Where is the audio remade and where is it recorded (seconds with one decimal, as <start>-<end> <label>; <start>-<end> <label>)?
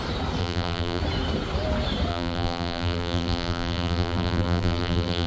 0.0-0.4 recorded; 0.4-1.0 remade; 1.0-2.1 recorded; 2.1-5.3 remade